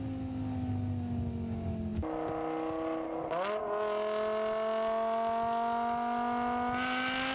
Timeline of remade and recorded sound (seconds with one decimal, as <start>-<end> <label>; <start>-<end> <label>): 0.0-7.3 recorded